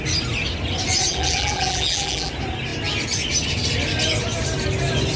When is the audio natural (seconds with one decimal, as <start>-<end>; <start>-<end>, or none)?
0.0-1.1; 2.3-5.2